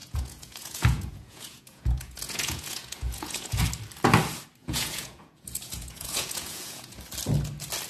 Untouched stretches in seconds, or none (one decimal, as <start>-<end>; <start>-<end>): 3.6-4.6; 7.0-7.9